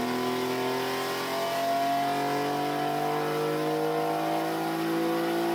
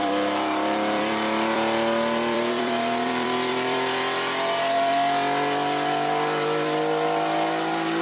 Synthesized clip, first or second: second